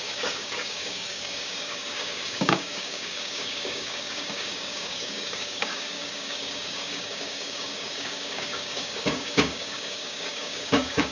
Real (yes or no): no